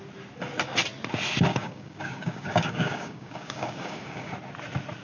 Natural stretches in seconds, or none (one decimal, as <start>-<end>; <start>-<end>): 0.0-1.5; 4.3-5.0